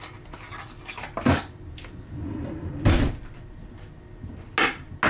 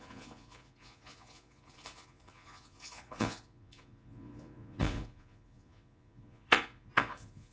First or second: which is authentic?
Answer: first